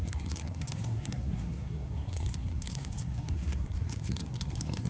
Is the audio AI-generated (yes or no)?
yes